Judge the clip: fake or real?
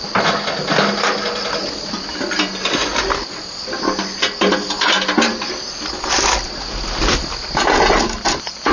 real